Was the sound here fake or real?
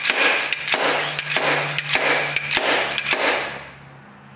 real